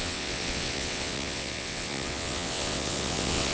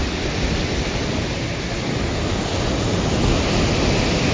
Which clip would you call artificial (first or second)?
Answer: first